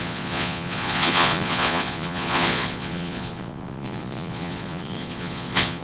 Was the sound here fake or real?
fake